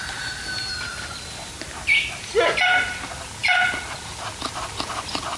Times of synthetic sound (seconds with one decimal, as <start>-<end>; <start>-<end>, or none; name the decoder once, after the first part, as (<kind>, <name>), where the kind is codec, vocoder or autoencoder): none